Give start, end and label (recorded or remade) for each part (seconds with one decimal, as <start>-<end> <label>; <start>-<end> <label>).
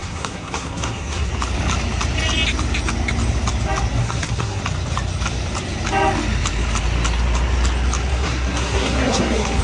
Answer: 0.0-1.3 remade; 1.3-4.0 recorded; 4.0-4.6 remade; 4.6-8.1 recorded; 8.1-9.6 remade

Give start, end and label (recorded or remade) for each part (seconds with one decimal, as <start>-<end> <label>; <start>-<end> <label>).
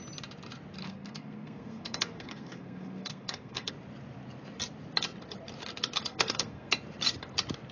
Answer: 0.0-0.8 recorded; 0.8-3.7 remade; 3.7-6.1 recorded; 6.1-6.7 remade; 6.7-7.7 recorded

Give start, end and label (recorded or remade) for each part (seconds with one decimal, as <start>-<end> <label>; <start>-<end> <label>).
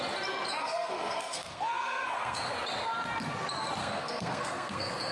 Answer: 0.0-0.6 recorded; 0.6-2.5 remade; 2.5-3.8 recorded; 3.8-5.1 remade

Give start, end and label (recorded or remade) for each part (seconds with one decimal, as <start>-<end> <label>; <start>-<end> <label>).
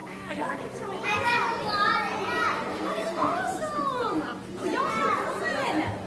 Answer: 0.0-0.6 remade; 0.6-2.7 recorded; 2.7-3.4 remade; 3.4-6.1 recorded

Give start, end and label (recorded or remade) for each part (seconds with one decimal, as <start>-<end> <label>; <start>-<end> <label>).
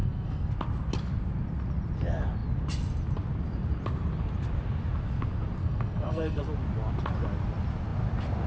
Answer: 0.0-0.5 remade; 0.5-5.6 recorded; 5.6-6.4 remade; 6.4-8.5 recorded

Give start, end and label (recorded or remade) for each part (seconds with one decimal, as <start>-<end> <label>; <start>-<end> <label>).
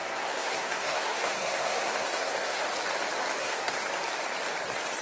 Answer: 0.0-2.6 remade; 2.6-3.4 recorded; 3.4-3.9 remade; 3.9-5.0 recorded